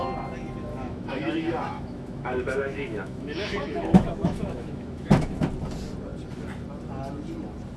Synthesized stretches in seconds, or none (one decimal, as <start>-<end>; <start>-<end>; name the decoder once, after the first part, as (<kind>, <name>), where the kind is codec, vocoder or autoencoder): 0.7-5.4 (autoencoder, DAC-VAE)